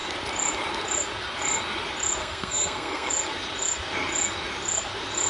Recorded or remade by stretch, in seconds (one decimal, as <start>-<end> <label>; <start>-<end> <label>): 0.0-2.2 recorded; 2.2-3.1 remade; 3.1-5.3 recorded